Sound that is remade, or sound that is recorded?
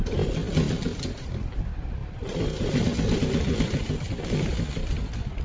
recorded